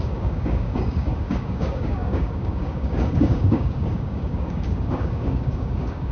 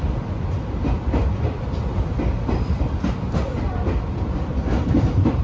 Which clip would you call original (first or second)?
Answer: second